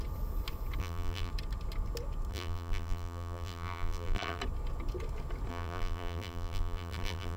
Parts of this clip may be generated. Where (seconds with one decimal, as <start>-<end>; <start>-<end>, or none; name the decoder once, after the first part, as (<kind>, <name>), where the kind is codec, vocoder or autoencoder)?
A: 0.8-1.3 (vocoder, BigVGAN v2); 2.3-4.4; 5.5-7.4